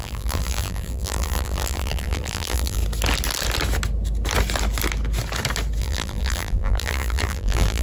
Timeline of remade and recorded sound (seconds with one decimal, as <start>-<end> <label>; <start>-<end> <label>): 0.0-2.8 remade; 2.8-5.8 recorded; 5.8-7.8 remade